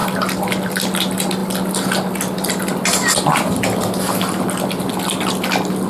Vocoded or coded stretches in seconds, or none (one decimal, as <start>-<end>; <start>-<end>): none